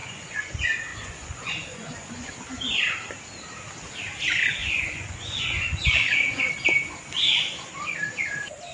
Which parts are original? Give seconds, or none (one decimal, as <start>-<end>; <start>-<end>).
0.5-0.9; 2.3-4.6; 6.5-8.7